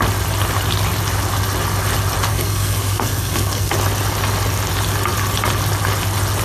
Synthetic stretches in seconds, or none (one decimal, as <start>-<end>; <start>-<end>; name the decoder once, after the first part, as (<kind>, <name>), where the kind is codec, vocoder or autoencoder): 2.3-3.7 (codec, SNAC)